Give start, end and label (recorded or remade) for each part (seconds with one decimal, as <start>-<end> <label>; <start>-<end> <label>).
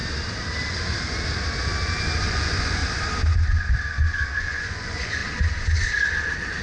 0.0-2.2 recorded; 2.2-2.8 remade; 2.8-4.4 recorded; 4.4-5.2 remade; 5.2-6.6 recorded